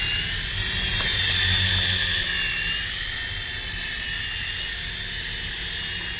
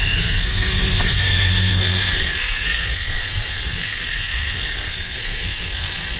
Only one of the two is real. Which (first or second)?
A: first